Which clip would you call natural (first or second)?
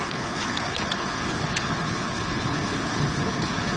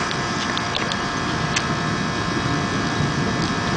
second